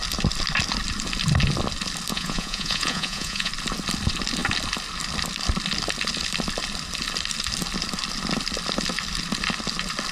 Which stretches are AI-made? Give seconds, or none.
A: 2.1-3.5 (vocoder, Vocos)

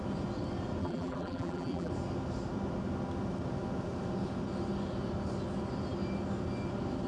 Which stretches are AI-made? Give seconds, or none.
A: 0.8-1.9 (vocoder, BigVGAN v2)

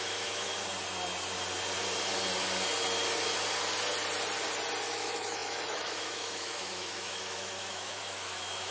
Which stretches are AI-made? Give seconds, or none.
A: 0.0-0.5 (autoencoder, DAC-VAE); 4.9-8.7

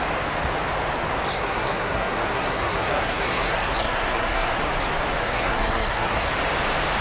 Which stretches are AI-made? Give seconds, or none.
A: 1.3-4.6 (codec, SNAC); 5.2-6.3

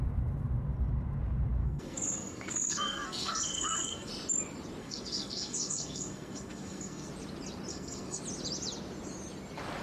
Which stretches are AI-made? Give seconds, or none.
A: 1.6-4.1 (codec, SNAC); 4.8-7.1; 7.7-8.2

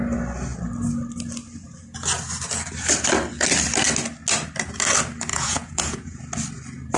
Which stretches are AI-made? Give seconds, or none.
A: 5.3-6.2 (vocoder, Vocos)